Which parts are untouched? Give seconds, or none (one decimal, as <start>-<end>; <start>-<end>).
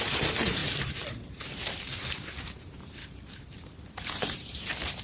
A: none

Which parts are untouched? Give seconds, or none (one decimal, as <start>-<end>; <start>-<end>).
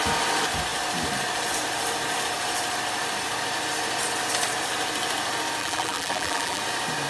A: 0.0-5.6; 6.6-7.1